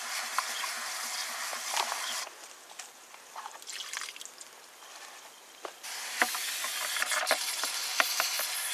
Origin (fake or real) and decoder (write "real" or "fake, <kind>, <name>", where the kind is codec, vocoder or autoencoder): real